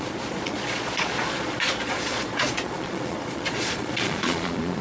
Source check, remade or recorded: remade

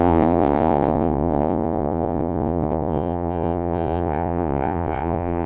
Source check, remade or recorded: remade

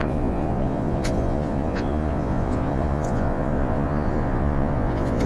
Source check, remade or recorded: remade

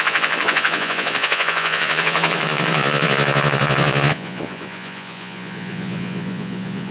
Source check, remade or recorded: remade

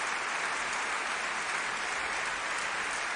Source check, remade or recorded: recorded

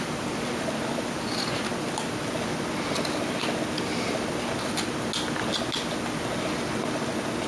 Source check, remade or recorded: recorded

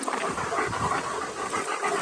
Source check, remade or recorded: recorded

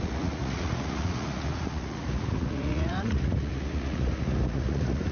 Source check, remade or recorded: remade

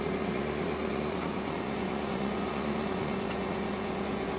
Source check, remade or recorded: remade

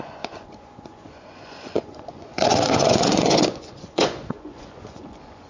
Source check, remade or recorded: remade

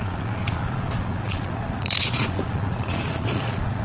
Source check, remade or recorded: remade